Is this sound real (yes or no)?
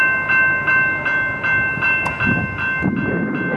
yes